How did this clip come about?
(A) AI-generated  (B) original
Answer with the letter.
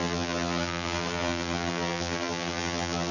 A